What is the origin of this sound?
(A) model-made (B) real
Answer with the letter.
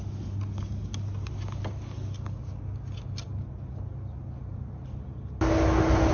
B